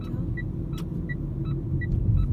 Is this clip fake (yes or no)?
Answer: no